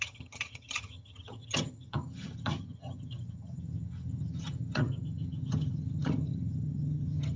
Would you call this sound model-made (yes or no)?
yes